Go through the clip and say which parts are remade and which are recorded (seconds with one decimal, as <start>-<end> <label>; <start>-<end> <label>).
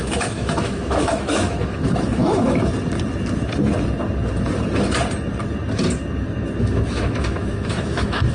0.0-2.7 remade; 2.7-6.6 recorded; 6.6-8.3 remade